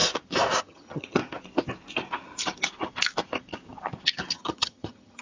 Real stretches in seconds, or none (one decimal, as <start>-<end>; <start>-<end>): 0.0-0.6; 1.2-4.3